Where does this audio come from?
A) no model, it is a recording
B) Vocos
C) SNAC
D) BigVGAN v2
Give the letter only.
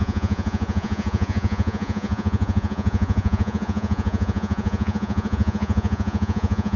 B